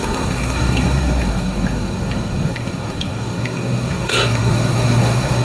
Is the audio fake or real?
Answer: fake